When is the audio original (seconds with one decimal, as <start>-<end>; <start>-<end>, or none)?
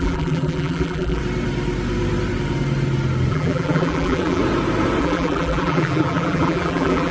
1.2-3.3; 4.4-5.0